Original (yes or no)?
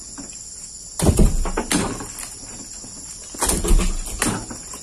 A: yes